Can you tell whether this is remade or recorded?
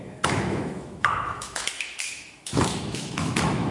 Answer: remade